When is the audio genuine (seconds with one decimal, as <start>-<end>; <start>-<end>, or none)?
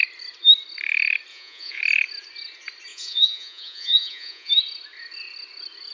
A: 0.0-1.3; 1.8-2.9; 4.5-5.9